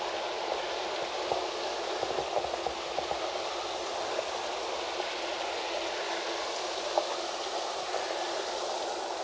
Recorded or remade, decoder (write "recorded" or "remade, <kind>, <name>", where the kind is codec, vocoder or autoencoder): recorded